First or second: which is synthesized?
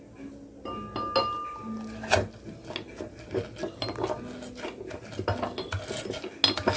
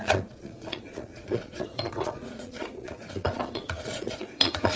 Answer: second